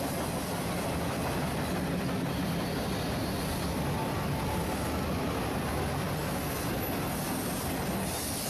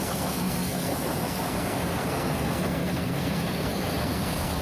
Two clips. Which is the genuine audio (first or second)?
first